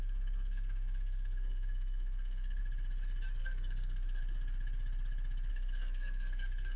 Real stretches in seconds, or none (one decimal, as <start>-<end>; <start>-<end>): 2.6-3.4; 4.2-5.5